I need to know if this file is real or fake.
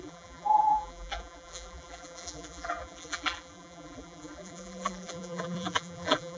fake